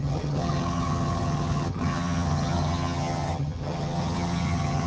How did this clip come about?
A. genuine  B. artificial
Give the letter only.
B